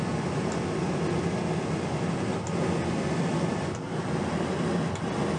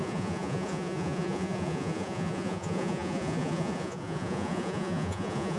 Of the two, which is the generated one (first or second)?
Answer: second